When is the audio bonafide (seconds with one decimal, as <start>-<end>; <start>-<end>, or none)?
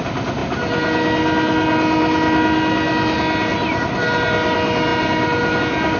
0.0-6.0